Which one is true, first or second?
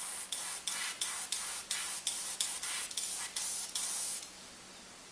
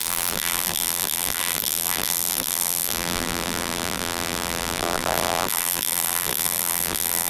first